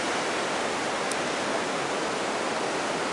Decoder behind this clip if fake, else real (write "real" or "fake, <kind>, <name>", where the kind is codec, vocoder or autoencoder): real